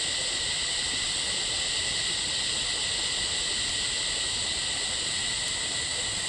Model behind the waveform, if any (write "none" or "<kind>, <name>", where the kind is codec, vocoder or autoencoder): none